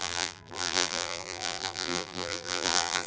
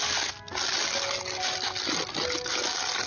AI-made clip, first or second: first